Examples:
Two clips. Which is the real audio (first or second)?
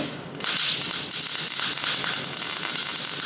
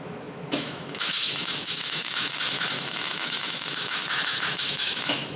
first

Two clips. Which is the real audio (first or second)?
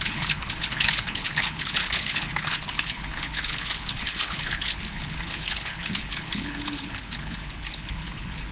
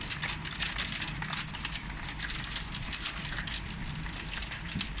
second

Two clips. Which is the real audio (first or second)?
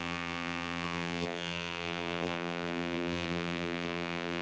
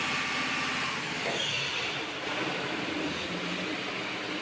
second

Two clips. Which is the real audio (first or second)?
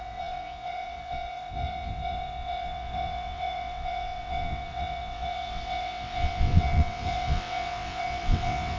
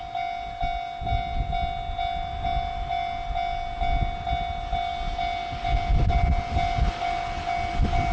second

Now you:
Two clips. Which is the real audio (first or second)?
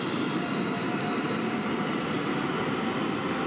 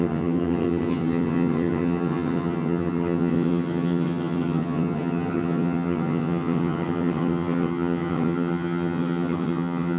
first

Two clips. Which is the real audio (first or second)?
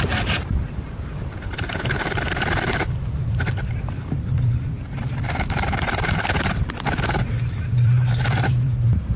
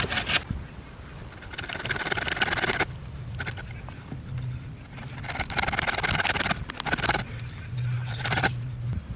second